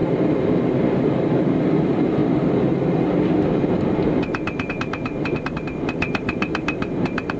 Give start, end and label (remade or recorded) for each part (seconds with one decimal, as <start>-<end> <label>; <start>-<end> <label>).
0.0-7.4 remade